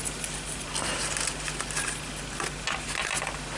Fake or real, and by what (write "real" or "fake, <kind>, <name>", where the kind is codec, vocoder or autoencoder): real